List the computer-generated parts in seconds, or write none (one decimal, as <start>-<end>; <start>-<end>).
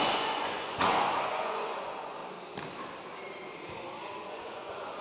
0.0-2.2; 4.0-5.0